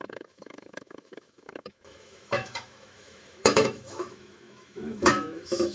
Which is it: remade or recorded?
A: remade